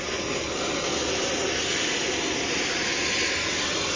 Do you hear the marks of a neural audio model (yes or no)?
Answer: no